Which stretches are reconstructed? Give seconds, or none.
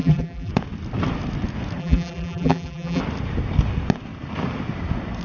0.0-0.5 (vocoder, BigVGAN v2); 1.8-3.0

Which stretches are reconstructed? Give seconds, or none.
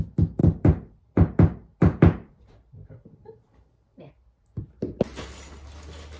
0.4-4.1 (vocoder, BigVGAN v2)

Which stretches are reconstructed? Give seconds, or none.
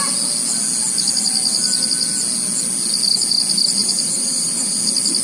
3.8-4.8 (vocoder, BigVGAN v2)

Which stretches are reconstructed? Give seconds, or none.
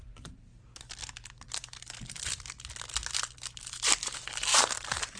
0.0-0.5 (vocoder, BigVGAN v2); 3.6-5.2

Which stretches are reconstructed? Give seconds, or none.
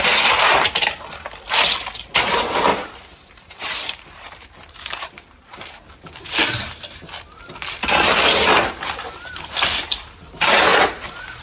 2.7-5.8 (vocoder, BigVGAN v2); 10.0-11.4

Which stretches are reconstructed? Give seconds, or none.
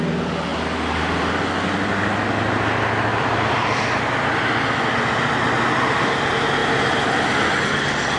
0.5-1.3 (vocoder, BigVGAN v2); 3.1-4.4; 6.6-7.3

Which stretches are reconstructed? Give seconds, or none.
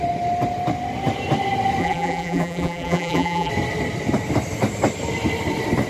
1.8-3.5 (vocoder, BigVGAN v2)